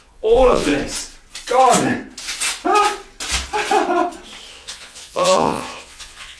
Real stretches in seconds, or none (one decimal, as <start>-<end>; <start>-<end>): 0.7-4.5